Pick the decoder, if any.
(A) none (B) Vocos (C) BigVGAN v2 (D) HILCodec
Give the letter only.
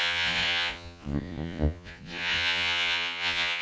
B